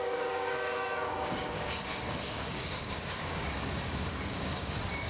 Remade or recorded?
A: remade